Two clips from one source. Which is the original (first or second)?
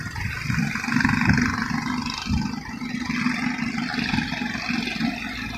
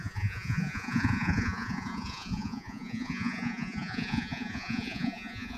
first